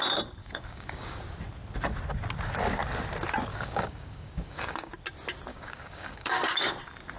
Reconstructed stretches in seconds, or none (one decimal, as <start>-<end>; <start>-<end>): 0.4-1.2; 3.5-4.9; 5.5-6.7